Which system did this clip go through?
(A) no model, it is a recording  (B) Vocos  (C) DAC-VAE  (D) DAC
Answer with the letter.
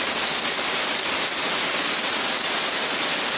A